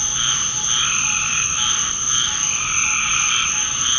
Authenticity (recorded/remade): recorded